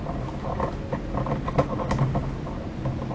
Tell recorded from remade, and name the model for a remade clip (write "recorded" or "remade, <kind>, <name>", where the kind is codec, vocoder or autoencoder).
recorded